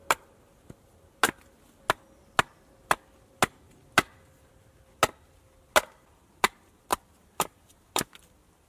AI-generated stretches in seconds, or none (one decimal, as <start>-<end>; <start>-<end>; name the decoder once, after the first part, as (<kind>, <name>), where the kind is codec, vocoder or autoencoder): 6.9-8.1 (vocoder, BigVGAN v2)